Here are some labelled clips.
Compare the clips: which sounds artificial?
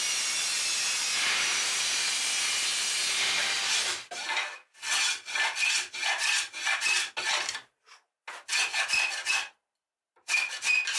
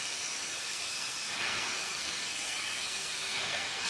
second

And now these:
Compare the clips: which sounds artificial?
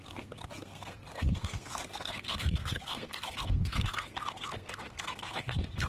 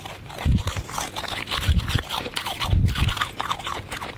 first